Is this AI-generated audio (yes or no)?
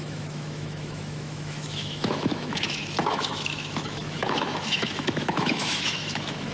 yes